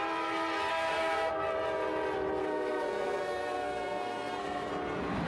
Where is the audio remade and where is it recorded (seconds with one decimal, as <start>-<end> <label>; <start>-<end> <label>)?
0.0-0.7 recorded; 0.7-1.3 remade; 1.3-2.4 recorded; 2.4-4.7 remade; 4.7-5.3 recorded